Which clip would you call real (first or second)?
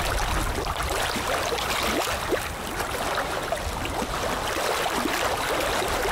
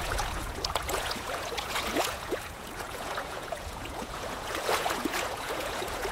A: first